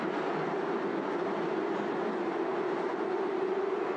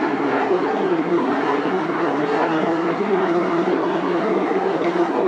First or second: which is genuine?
first